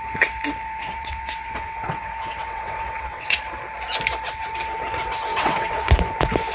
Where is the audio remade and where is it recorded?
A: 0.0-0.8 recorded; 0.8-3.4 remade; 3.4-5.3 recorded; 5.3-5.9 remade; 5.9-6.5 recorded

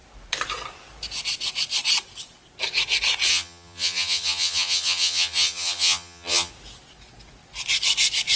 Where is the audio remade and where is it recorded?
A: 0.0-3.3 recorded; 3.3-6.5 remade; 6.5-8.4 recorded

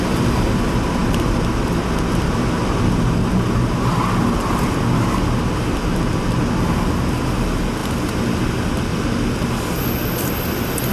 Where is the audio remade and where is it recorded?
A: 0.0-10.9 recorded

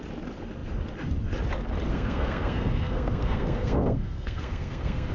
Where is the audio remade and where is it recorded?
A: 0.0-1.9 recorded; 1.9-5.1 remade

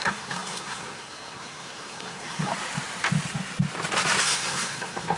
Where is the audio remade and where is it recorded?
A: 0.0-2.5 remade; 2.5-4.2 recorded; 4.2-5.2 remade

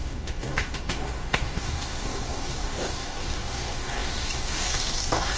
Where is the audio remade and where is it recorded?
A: 0.0-5.4 remade

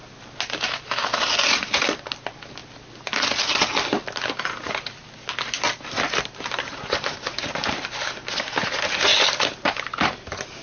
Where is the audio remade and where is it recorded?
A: 0.0-10.6 recorded

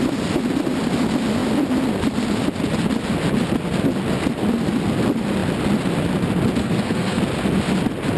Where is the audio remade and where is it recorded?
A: 0.0-6.6 recorded; 6.6-7.2 remade; 7.2-8.2 recorded